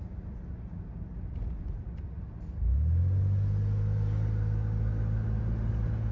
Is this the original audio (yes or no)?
yes